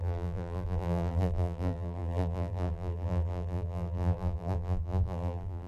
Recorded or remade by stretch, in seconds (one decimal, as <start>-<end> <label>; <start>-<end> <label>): 0.0-5.7 remade